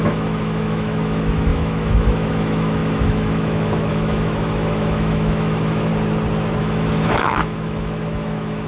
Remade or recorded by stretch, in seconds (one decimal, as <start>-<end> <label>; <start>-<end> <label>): 0.0-5.9 remade; 5.9-6.6 recorded; 6.6-8.7 remade